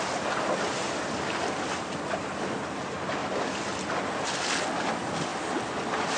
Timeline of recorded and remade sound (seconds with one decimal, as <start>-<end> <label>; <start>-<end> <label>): 0.0-6.2 recorded